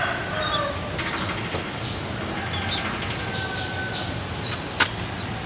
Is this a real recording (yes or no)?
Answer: yes